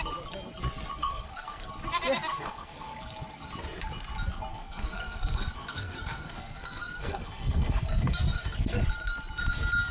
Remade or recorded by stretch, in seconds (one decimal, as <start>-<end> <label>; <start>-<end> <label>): 0.0-1.0 recorded; 1.0-1.7 remade; 1.7-2.3 recorded; 2.3-3.0 remade; 3.0-4.5 recorded; 4.5-8.8 remade; 8.8-9.9 recorded